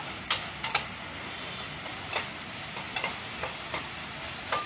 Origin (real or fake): real